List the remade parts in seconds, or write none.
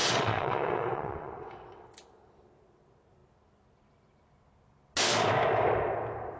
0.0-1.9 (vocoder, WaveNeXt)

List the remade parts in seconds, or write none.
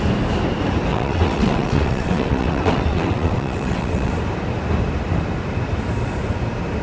0.9-4.1 (vocoder, WaveNeXt)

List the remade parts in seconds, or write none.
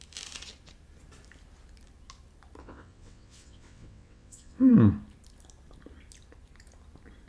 2.6-4.7 (vocoder, WaveNeXt)